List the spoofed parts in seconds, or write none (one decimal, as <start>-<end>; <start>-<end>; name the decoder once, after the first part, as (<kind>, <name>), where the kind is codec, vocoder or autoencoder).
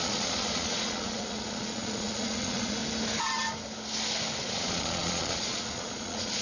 0.0-2.8 (vocoder, Vocos); 4.4-6.4